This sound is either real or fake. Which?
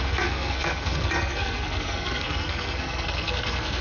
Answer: fake